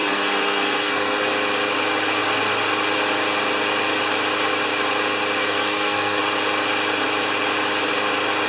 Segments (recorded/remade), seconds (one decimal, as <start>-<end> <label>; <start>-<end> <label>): 0.0-1.3 remade; 1.3-5.4 recorded; 5.4-6.2 remade; 6.2-8.5 recorded